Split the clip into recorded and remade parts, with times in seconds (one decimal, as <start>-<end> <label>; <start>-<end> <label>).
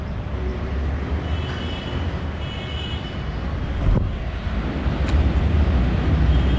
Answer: 0.0-6.6 recorded